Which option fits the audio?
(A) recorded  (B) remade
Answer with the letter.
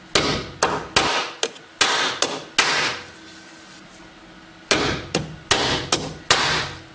A